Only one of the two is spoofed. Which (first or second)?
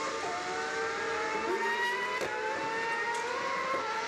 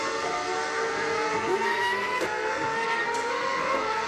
second